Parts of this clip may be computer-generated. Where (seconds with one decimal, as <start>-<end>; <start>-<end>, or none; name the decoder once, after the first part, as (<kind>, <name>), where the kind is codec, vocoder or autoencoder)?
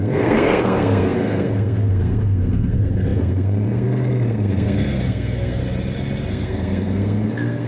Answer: 0.0-5.6 (codec, SNAC); 6.3-7.7